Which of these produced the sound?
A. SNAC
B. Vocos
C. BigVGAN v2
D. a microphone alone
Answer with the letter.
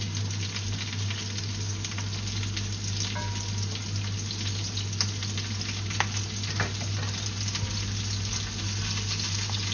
D